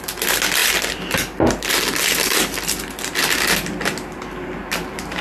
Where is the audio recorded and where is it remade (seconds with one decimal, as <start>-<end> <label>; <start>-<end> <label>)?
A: 0.0-5.2 recorded